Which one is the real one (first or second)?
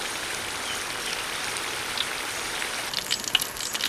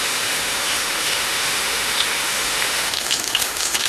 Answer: first